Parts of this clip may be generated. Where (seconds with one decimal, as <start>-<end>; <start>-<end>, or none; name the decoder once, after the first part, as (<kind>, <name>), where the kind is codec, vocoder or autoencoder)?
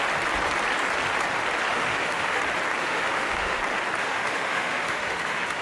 1.7-2.4 (autoencoder, DAC-VAE); 2.8-3.6; 4.0-5.6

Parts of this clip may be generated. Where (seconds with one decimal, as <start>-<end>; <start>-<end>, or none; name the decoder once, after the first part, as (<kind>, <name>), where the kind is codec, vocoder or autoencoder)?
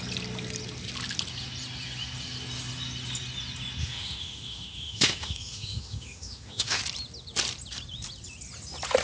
3.8-6.8 (autoencoder, DAC-VAE)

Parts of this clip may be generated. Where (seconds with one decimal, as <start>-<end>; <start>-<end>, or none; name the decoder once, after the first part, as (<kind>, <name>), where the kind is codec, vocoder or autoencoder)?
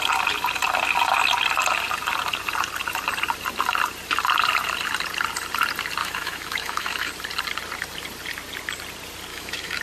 6.0-7.1 (autoencoder, DAC-VAE); 9.3-9.8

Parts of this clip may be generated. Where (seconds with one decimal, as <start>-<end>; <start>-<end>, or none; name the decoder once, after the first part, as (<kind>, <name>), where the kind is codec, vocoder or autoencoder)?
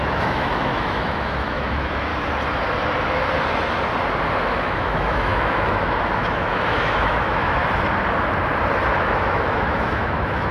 0.0-2.1 (autoencoder, DAC-VAE); 4.4-7.6; 9.0-10.5